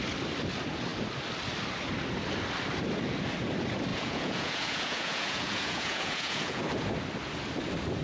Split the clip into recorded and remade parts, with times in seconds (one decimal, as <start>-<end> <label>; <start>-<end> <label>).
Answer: 0.0-3.9 recorded; 3.9-6.6 remade; 6.6-8.0 recorded